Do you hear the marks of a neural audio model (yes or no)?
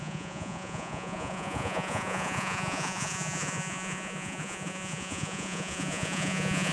yes